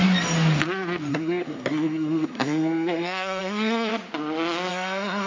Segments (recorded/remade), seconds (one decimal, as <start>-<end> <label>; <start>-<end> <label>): 0.0-1.1 recorded; 1.1-3.9 remade; 3.9-4.7 recorded; 4.7-5.3 remade